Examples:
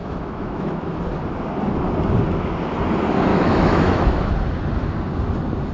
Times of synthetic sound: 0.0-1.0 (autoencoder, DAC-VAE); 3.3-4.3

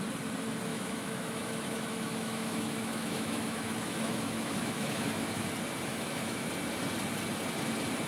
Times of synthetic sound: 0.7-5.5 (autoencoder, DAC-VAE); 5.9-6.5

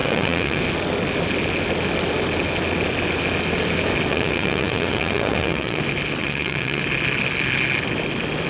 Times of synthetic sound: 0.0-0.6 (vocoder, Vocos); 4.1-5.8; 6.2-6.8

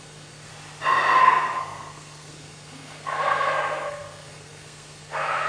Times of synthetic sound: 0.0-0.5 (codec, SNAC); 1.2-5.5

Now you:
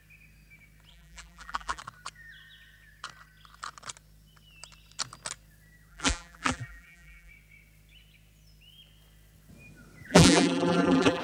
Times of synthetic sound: 0.9-1.8 (vocoder, BigVGAN v2); 5.9-7.3; 10.1-11.2